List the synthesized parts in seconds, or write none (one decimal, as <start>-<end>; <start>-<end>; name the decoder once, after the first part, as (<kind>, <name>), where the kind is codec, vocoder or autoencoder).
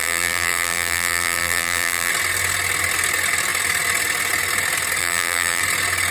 0.0-2.1 (vocoder, BigVGAN v2); 5.0-5.6